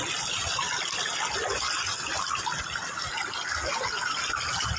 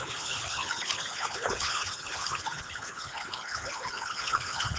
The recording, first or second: first